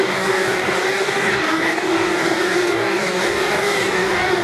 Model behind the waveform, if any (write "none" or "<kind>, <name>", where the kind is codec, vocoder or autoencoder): codec, DAC